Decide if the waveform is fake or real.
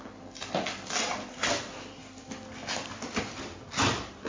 real